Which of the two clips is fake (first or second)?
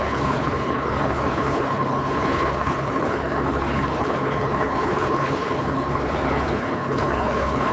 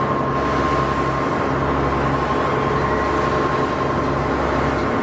first